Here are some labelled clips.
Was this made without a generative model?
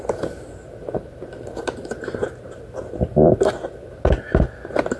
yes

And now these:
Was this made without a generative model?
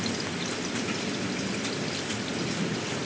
yes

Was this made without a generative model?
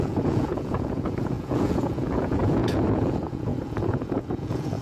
no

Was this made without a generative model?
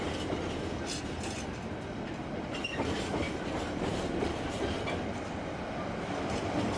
yes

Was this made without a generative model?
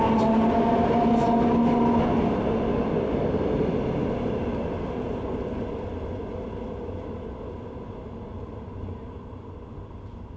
yes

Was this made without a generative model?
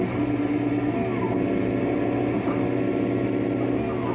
yes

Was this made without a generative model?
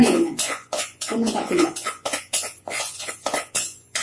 no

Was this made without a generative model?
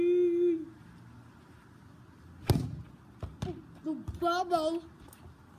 yes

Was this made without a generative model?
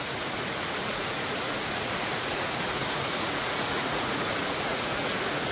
no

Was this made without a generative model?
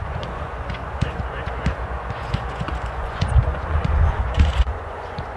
no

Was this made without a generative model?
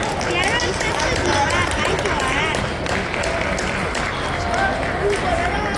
yes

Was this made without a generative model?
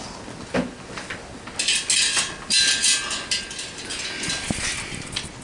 yes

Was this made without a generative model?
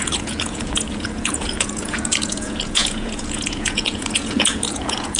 no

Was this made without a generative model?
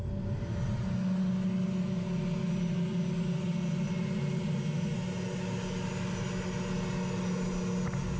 yes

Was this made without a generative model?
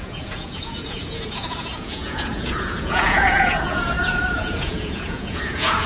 no